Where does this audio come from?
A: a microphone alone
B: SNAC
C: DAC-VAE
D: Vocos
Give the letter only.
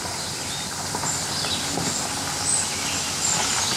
A